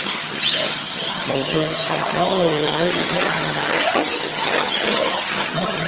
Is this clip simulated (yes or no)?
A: yes